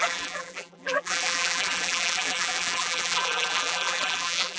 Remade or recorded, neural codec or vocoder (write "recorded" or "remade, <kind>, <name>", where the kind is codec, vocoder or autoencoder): remade, vocoder, BigVGAN v2